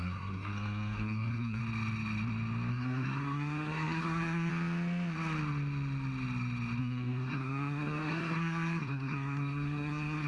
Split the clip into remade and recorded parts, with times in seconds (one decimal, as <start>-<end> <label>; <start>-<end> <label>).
0.0-1.6 remade; 1.6-2.7 recorded; 2.7-4.5 remade; 4.5-6.8 recorded; 6.8-10.3 remade